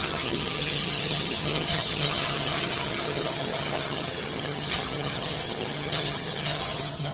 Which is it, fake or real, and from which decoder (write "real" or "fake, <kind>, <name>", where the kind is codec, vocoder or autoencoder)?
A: fake, vocoder, HiFi-GAN